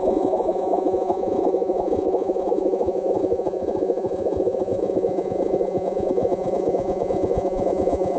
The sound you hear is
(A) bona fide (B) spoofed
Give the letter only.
B